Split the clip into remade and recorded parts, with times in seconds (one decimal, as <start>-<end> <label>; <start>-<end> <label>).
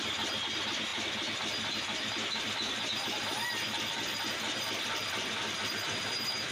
0.0-6.5 recorded